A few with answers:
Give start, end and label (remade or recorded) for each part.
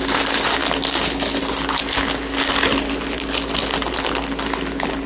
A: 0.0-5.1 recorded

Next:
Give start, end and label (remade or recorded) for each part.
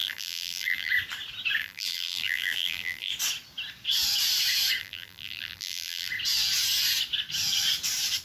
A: 0.0-0.9 remade; 0.9-1.6 recorded; 1.6-3.1 remade; 3.1-4.8 recorded; 4.8-6.1 remade; 6.1-8.2 recorded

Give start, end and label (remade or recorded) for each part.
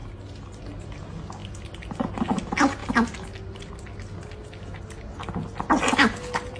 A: 0.0-6.6 recorded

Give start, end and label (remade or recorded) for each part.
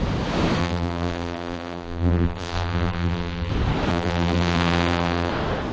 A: 0.0-0.6 recorded; 0.6-3.5 remade; 3.5-3.9 recorded; 3.9-5.3 remade; 5.3-5.7 recorded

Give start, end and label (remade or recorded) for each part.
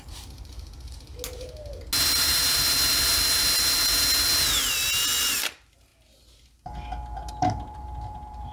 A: 0.0-1.1 remade; 1.1-5.2 recorded; 5.2-5.9 remade; 5.9-7.3 recorded; 7.3-8.5 remade